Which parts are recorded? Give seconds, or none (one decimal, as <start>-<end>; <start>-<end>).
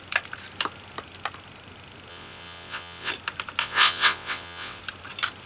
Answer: 0.0-2.1; 3.1-3.6; 4.8-5.5